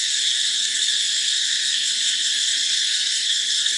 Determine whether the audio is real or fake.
fake